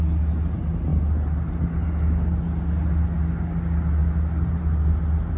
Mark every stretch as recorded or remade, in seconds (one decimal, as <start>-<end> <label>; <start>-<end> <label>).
0.0-5.4 recorded